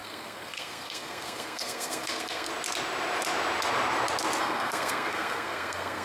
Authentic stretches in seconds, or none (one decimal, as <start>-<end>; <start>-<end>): 2.5-4.4